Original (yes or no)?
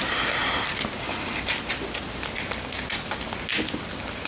yes